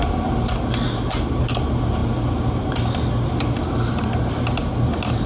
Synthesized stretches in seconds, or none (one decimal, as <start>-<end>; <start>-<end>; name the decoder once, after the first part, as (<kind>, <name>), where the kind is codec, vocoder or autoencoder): none